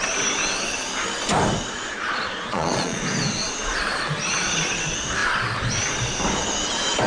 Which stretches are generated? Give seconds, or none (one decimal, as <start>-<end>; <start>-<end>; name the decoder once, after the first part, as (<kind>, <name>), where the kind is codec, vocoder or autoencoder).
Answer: 2.1-3.0 (vocoder, Vocos)